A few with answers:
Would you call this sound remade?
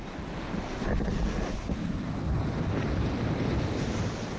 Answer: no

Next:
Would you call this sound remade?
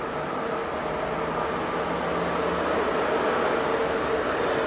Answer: no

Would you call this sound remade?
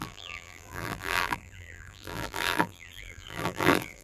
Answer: yes